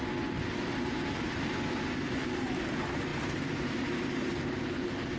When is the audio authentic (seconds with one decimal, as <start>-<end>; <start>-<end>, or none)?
0.0-5.2